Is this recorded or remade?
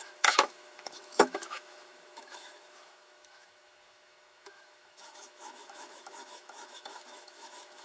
remade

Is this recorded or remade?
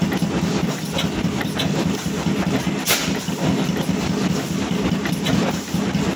recorded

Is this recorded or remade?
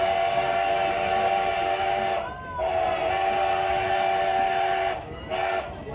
recorded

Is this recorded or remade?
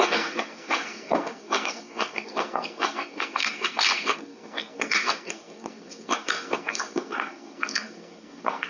remade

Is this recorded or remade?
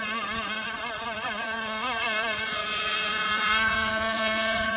remade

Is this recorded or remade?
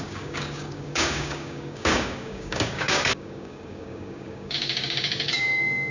remade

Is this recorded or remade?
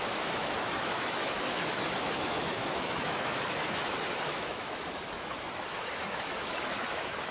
remade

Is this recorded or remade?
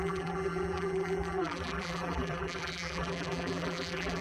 remade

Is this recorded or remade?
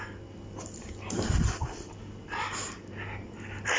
recorded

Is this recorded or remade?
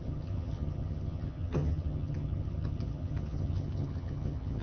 remade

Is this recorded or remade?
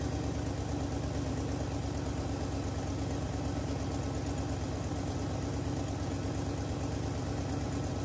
recorded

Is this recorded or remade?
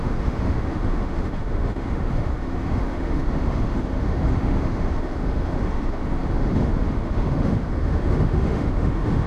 remade